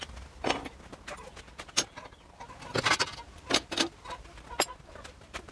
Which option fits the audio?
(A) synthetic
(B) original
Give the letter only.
B